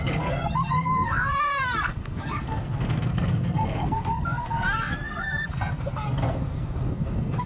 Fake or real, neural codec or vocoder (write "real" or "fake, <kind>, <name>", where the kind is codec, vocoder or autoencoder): fake, codec, SNAC